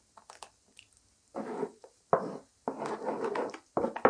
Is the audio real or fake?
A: real